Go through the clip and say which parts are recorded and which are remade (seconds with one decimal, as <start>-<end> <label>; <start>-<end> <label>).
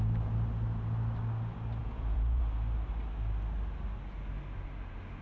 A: 0.0-1.8 recorded; 1.8-2.4 remade; 2.4-5.2 recorded